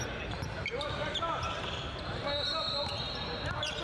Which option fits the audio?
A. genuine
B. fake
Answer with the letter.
A